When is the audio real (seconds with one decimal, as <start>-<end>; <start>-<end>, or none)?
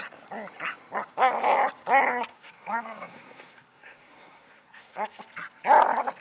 0.0-2.3; 5.2-6.2